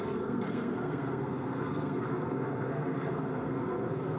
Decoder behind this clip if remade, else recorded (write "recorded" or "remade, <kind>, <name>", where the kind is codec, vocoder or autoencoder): remade, codec, SNAC